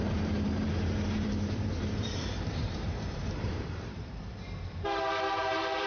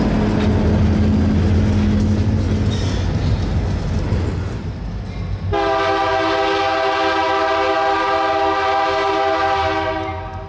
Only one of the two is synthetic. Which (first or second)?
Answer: first